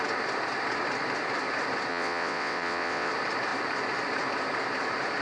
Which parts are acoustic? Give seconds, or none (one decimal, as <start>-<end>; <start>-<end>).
0.0-1.9; 3.1-5.2